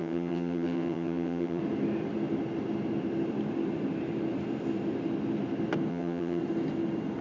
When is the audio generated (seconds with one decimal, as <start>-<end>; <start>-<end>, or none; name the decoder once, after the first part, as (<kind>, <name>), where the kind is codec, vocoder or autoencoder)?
0.0-1.6 (vocoder, HiFi-GAN); 5.9-6.4